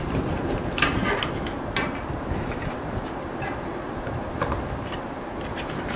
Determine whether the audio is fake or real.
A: fake